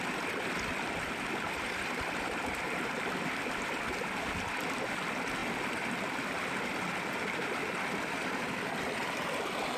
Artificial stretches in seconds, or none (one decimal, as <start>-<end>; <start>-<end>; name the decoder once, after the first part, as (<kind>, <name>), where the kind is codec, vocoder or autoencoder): none